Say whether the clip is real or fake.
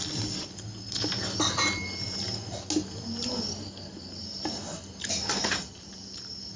real